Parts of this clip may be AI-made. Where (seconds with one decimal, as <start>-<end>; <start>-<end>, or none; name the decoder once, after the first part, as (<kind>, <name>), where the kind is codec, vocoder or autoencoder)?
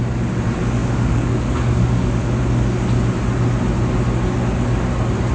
0.8-2.4 (codec, DAC)